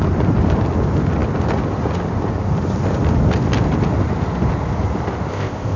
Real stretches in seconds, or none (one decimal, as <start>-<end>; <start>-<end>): 0.0-5.3